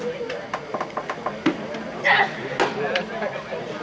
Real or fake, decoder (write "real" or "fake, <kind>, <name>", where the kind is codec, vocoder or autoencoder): real